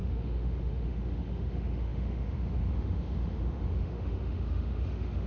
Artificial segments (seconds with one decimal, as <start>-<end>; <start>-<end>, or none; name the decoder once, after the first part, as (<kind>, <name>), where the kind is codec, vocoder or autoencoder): 0.0-5.3 (autoencoder, DAC-VAE)